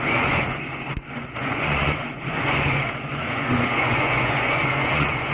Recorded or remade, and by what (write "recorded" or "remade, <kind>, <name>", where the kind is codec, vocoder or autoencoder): remade, vocoder, Vocos